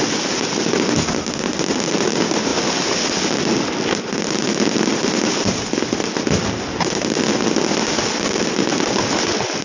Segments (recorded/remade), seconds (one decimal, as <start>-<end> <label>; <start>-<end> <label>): 0.0-9.6 recorded